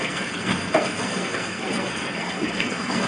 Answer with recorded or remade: remade